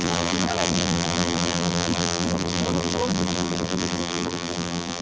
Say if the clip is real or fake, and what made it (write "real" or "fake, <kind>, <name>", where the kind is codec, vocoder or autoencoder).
fake, vocoder, BigVGAN v2